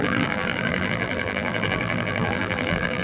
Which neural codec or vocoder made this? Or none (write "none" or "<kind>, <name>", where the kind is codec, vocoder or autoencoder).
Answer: vocoder, BigVGAN v2